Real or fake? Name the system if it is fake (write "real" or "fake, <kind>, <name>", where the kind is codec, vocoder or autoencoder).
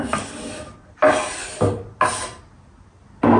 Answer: real